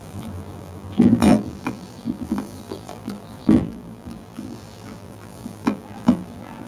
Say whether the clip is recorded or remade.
remade